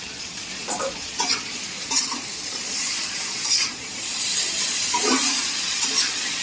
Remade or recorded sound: remade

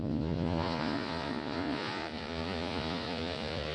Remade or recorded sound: remade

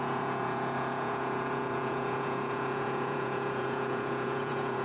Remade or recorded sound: remade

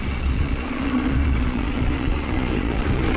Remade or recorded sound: remade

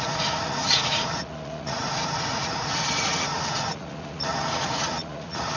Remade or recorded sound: remade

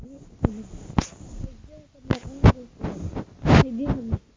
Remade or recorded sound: recorded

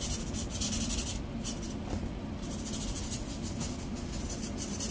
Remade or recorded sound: recorded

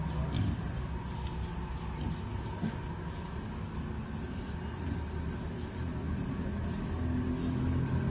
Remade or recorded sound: recorded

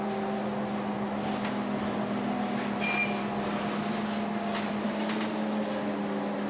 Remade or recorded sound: recorded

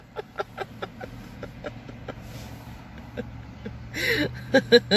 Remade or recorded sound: recorded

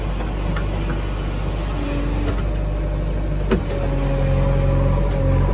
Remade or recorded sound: recorded